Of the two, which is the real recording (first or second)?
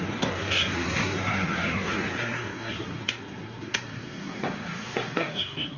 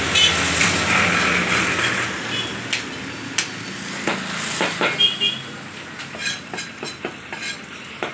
second